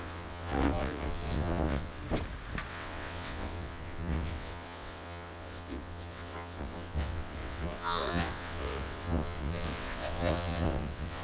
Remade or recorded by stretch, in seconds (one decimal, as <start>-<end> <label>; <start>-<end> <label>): 0.0-2.0 remade; 2.0-2.7 recorded; 2.7-11.2 remade